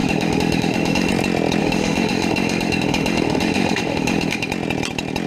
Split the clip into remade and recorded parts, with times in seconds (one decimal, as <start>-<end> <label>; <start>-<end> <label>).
0.0-1.1 remade; 1.1-1.6 recorded; 1.6-4.5 remade; 4.5-5.3 recorded